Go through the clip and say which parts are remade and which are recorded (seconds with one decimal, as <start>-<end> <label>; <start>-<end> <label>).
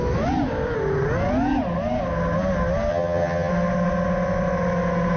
0.0-2.9 recorded; 2.9-3.5 remade; 3.5-5.2 recorded